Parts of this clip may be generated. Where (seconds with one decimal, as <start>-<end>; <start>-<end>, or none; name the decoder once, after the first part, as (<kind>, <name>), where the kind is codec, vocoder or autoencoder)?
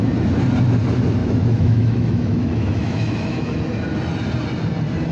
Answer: 1.2-3.6 (autoencoder, DAC-VAE)